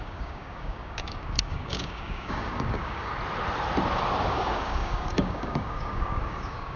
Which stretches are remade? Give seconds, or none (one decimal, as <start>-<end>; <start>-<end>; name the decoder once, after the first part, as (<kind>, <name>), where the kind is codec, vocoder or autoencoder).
0.0-3.1 (codec, DAC); 4.3-6.8